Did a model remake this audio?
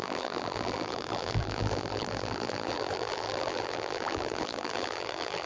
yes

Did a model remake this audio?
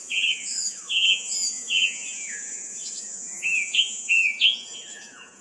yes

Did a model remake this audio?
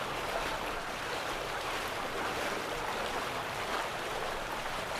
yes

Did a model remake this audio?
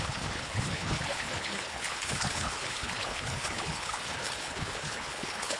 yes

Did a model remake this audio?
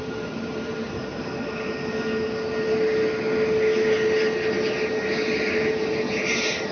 no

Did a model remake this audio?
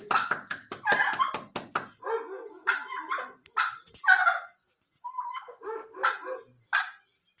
no